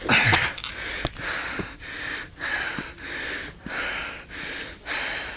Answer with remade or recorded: recorded